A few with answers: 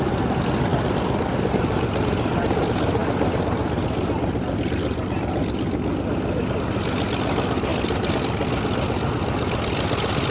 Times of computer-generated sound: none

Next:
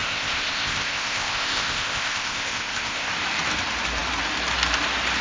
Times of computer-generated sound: 0.0-3.1 (codec, ZipCodec)

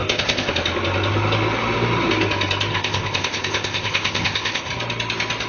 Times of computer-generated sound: 0.0-0.5 (codec, ZipCodec); 2.7-4.7

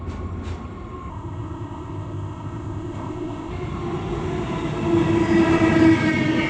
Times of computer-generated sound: 1.1-3.5 (codec, ZipCodec)